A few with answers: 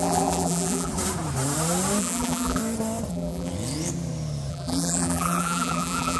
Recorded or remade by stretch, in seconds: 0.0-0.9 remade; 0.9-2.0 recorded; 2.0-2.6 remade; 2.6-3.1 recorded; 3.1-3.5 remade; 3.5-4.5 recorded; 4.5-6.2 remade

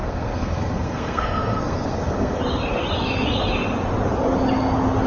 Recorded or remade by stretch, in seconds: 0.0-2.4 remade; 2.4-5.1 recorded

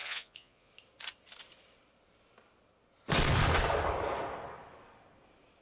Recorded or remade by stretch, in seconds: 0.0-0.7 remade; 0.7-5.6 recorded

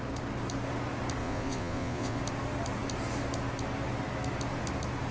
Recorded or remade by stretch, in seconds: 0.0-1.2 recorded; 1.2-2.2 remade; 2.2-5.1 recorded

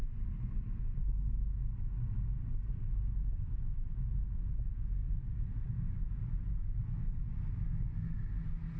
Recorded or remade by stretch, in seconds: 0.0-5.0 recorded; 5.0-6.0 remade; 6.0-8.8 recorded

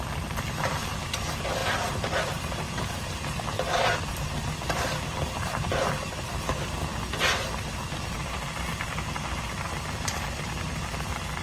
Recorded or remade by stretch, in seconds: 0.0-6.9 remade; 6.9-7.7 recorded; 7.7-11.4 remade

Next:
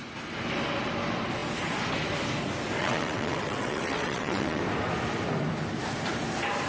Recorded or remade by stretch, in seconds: 0.0-2.8 recorded; 2.8-4.6 remade; 4.6-6.7 recorded

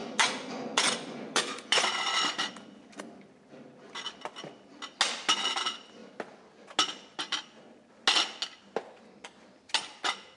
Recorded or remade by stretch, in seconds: 0.0-2.5 remade; 2.5-10.4 recorded